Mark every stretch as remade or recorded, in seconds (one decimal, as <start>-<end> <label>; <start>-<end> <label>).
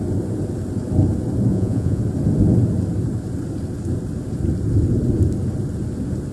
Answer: 0.0-1.5 recorded; 1.5-2.0 remade; 2.0-6.3 recorded